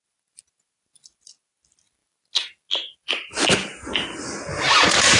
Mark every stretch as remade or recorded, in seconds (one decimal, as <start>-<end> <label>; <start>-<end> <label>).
0.0-5.2 recorded